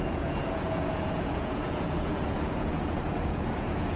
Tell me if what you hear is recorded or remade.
remade